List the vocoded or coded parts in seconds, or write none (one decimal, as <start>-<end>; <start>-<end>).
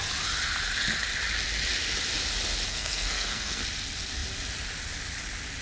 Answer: 2.7-3.6